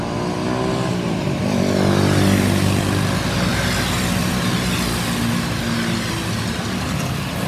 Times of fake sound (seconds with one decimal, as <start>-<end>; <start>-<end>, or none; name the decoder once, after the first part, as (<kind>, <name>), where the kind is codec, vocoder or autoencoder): none

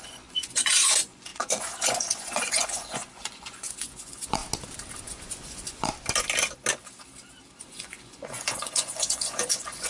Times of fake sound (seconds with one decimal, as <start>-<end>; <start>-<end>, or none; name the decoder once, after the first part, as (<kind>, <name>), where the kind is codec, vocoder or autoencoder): 0.0-4.4 (vocoder, Vocos); 5.0-5.9; 7.6-9.9

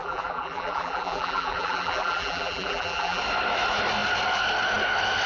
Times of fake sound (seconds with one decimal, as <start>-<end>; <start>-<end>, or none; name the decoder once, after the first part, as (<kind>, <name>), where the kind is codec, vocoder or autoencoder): 0.0-3.2 (vocoder, BigVGAN v2)

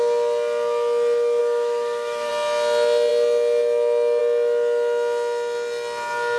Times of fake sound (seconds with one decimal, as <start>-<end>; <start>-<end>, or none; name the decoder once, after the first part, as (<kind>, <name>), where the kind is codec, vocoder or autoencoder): 1.4-2.3 (autoencoder, DAC-VAE)

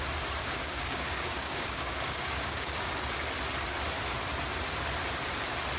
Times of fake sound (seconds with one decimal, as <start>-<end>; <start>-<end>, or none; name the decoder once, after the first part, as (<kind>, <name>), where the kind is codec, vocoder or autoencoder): 0.4-2.9 (codec, DAC)

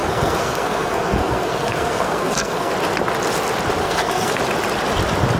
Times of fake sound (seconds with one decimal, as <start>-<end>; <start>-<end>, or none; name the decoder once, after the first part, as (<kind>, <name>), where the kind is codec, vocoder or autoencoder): 0.0-2.7 (codec, SNAC); 3.8-4.4

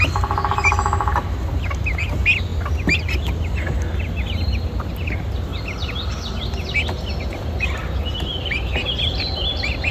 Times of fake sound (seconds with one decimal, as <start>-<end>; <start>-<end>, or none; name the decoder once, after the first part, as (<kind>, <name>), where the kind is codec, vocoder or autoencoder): none